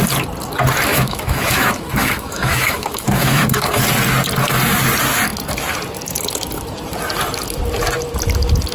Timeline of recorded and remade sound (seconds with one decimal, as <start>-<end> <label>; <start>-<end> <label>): 0.0-0.9 recorded; 0.9-3.8 remade; 3.8-8.7 recorded